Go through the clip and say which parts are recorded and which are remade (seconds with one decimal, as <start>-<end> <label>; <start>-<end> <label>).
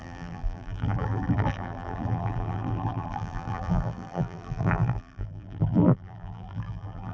0.0-7.1 remade